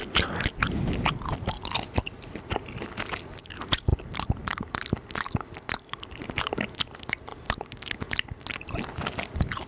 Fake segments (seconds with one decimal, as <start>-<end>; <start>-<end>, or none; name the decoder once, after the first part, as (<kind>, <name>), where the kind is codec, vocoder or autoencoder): 7.3-8.0 (vocoder, BigVGAN v2)